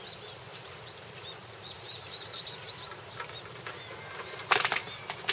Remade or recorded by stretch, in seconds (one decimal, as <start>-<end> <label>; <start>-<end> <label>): 0.0-0.5 recorded; 0.5-3.7 remade; 3.7-5.3 recorded